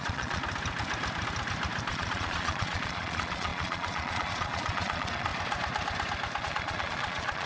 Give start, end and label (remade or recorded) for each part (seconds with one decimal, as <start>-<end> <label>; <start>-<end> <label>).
0.0-0.4 remade; 0.4-1.9 recorded; 1.9-5.3 remade; 5.3-6.4 recorded; 6.4-7.5 remade